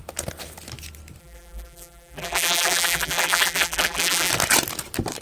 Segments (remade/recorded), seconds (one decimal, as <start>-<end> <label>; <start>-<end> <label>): 0.0-1.2 recorded; 1.2-4.3 remade; 4.3-5.2 recorded